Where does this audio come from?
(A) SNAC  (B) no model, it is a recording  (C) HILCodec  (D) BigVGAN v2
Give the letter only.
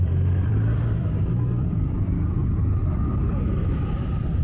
D